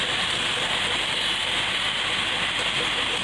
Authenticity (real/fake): real